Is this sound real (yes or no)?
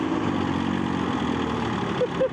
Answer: yes